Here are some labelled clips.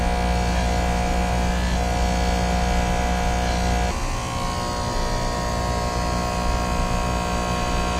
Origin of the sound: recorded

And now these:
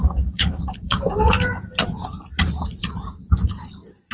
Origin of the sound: remade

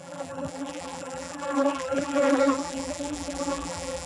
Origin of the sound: remade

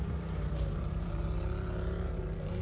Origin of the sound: remade